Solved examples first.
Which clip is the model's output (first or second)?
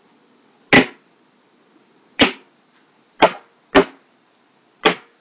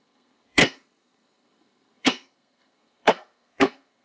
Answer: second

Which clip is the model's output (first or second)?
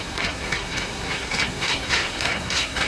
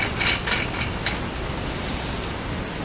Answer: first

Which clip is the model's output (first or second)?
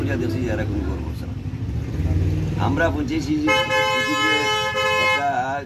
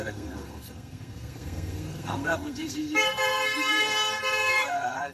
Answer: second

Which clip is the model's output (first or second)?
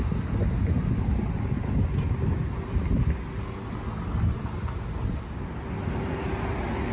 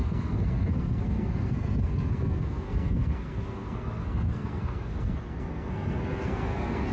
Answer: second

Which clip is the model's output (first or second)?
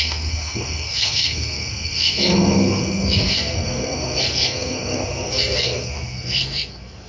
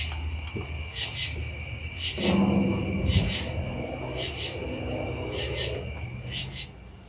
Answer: first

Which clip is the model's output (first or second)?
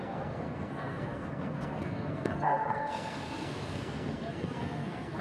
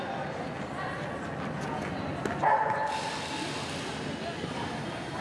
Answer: first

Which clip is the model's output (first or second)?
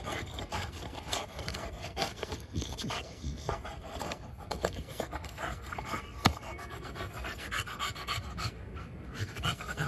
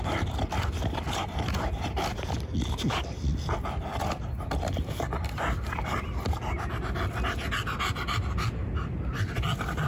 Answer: first